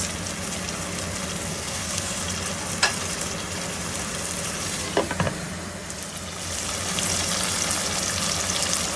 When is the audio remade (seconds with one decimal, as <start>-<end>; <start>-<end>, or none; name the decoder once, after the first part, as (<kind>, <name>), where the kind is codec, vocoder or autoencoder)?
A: 1.5-2.2 (codec, SNAC)